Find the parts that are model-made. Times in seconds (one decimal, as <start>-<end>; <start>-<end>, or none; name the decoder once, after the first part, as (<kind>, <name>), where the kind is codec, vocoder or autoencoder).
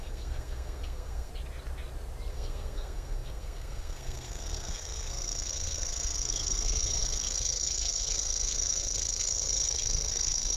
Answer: 0.0-1.3 (codec, SNAC); 2.3-10.6